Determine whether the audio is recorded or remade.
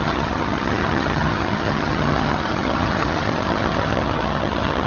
remade